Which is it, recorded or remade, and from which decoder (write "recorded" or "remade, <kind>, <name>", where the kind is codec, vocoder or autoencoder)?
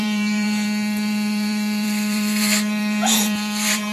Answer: remade, vocoder, BigVGAN v2